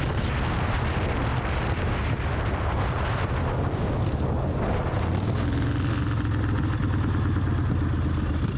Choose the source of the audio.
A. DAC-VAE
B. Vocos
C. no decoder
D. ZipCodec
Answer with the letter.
C